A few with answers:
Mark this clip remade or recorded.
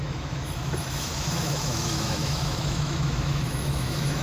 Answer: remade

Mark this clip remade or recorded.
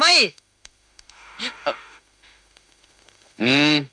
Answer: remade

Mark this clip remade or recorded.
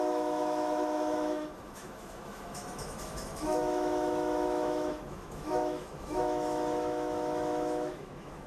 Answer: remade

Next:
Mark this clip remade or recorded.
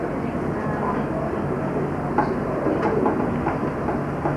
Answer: recorded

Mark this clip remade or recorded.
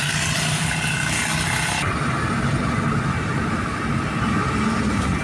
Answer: recorded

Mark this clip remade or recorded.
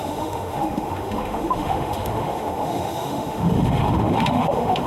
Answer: remade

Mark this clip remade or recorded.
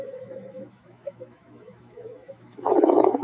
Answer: remade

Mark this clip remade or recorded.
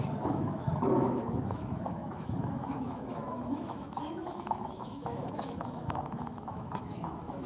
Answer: remade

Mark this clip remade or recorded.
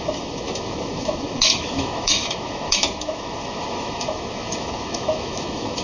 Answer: remade